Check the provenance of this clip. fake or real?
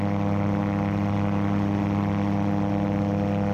real